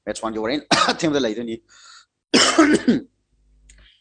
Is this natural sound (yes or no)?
yes